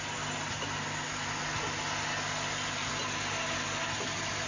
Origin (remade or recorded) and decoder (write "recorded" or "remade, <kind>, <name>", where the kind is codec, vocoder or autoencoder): recorded